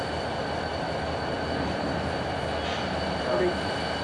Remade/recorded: recorded